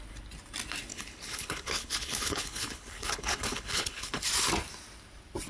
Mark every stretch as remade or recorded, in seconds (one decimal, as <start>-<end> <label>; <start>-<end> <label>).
0.0-0.9 recorded; 0.9-4.2 remade; 4.2-5.5 recorded